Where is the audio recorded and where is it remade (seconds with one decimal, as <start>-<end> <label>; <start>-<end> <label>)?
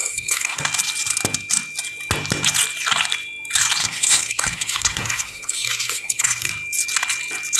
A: 0.0-0.6 remade; 0.6-3.8 recorded; 3.8-6.5 remade; 6.5-7.6 recorded